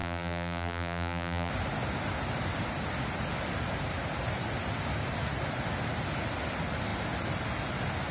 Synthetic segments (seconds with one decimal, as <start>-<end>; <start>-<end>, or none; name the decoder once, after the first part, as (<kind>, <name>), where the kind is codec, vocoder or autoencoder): 0.0-1.5 (vocoder, BigVGAN v2)